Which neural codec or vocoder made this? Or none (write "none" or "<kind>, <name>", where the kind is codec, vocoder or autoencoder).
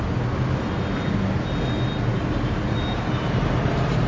none